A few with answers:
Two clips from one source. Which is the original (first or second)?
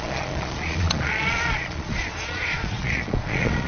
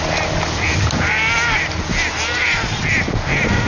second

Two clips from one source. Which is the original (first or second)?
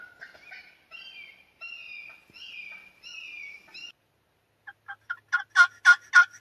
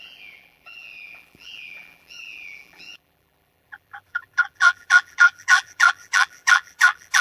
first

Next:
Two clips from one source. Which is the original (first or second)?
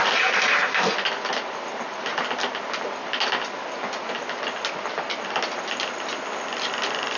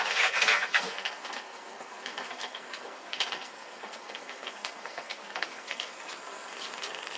first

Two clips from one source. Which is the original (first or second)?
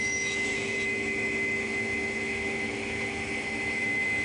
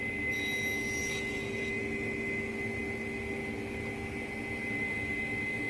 second